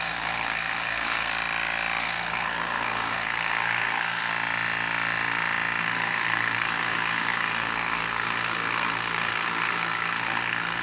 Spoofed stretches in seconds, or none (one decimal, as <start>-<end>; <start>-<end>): 0.0-1.3; 2.0-4.3; 5.8-10.8